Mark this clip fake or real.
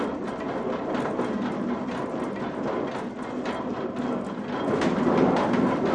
real